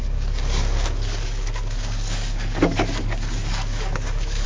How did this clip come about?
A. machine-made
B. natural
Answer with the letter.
A